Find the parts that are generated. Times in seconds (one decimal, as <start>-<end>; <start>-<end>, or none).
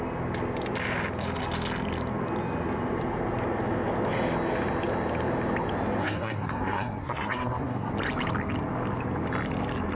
6.0-7.9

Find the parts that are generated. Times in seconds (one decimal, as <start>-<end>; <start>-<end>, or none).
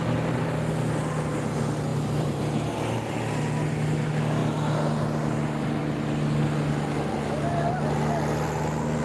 1.9-2.4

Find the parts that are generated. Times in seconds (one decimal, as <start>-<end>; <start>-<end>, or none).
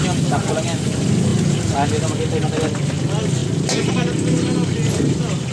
none